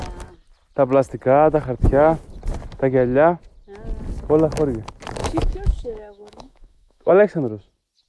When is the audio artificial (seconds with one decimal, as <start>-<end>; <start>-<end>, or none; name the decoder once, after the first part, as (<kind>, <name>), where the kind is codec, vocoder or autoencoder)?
5.2-7.1 (autoencoder, DAC-VAE)